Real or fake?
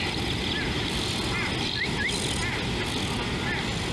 real